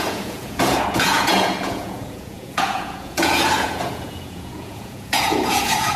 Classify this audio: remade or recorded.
remade